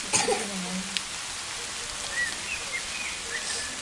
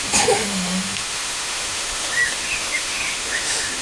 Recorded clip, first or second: first